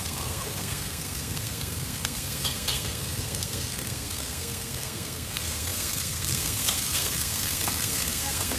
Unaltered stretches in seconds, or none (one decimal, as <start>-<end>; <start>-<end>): none